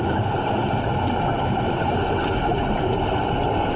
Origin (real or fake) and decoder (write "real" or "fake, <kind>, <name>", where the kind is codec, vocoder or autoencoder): real